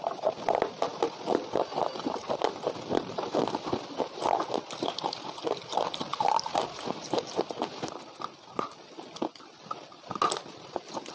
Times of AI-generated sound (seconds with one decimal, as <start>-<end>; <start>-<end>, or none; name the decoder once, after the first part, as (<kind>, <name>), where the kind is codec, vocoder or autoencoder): none